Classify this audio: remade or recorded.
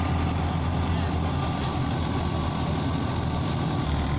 recorded